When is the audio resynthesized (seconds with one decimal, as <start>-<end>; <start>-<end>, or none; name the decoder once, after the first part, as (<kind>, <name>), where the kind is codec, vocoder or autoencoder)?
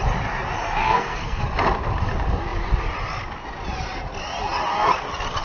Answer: 0.8-1.4 (codec, SNAC)